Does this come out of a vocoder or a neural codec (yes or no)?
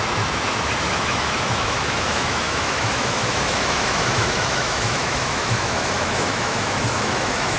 yes